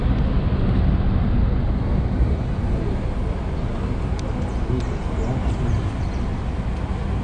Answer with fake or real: real